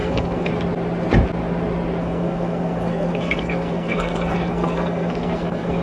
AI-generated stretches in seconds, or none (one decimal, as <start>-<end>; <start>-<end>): 0.0-0.5; 2.0-5.8